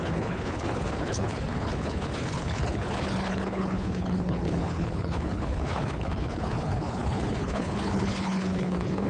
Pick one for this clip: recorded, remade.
remade